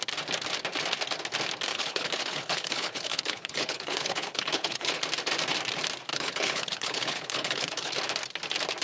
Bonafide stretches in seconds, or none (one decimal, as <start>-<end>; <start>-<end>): 0.0-1.7; 5.0-6.1; 7.9-8.8